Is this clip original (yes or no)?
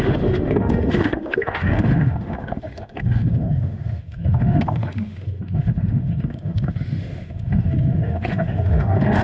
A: no